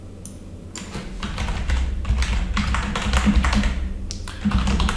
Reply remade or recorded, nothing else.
recorded